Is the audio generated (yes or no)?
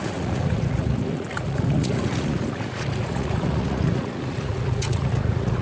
yes